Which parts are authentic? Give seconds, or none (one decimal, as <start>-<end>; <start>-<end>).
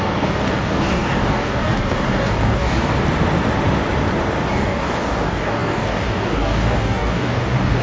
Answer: 2.9-4.5